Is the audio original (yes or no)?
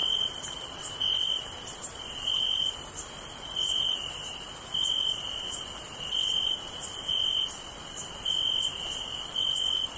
yes